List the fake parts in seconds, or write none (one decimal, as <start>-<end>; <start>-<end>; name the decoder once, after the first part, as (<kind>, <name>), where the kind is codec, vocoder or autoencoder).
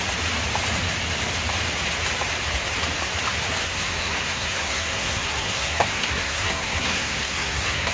3.6-7.9 (codec, SNAC)